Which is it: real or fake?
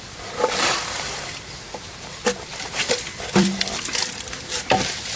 fake